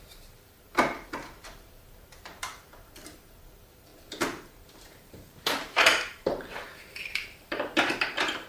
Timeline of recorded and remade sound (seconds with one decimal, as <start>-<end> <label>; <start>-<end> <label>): 0.0-8.5 remade